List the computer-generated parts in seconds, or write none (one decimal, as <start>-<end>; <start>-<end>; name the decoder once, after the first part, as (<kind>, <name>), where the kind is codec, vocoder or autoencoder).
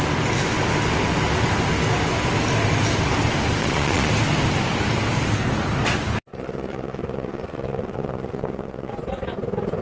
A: 3.6-4.1 (vocoder, Vocos); 6.3-8.9